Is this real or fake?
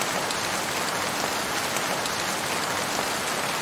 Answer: real